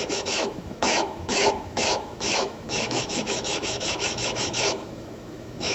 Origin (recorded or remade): remade